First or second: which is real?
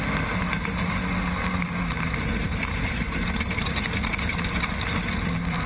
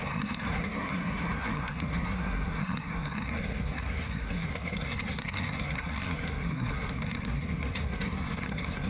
first